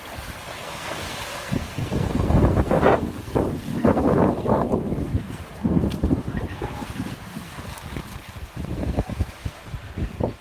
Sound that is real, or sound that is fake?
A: fake